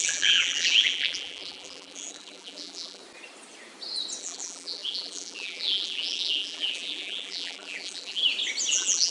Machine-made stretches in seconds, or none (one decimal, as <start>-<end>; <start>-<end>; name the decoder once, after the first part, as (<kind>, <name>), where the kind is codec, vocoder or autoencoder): 0.0-3.0 (vocoder, BigVGAN v2); 4.2-8.2; 8.7-9.1